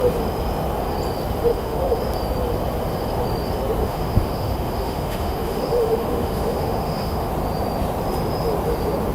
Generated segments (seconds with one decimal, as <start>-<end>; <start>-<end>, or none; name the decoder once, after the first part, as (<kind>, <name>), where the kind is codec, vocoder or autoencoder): 1.5-2.0 (autoencoder, DAC-VAE); 3.8-7.3